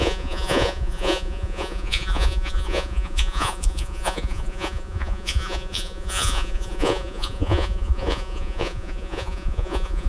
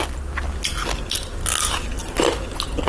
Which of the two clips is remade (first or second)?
first